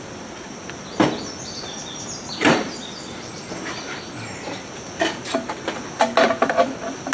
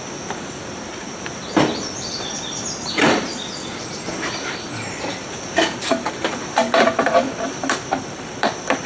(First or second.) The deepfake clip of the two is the second